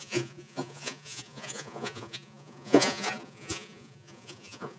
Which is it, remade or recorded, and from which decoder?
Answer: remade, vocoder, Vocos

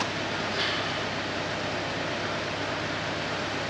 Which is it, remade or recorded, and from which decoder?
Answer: recorded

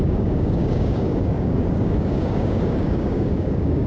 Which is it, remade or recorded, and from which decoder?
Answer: remade, codec, DAC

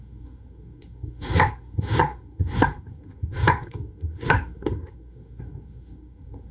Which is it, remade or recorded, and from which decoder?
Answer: remade, codec, SNAC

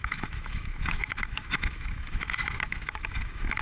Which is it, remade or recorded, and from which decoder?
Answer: remade, autoencoder, DAC-VAE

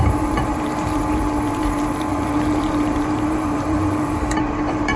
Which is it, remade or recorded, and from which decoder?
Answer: remade, vocoder, BigVGAN v2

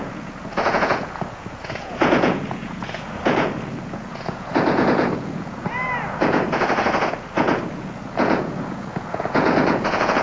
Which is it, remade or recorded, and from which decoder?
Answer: remade, vocoder, Vocos